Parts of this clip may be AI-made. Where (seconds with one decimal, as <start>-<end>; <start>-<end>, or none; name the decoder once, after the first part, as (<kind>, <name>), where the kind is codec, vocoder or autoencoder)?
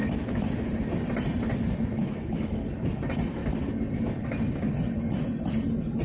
0.0-0.7 (autoencoder, DAC-VAE); 2.0-2.5